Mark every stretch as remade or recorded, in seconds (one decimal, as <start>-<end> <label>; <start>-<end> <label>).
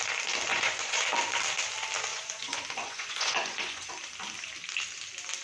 0.0-0.5 recorded; 0.5-1.0 remade; 1.0-2.1 recorded; 2.1-3.9 remade; 3.9-5.4 recorded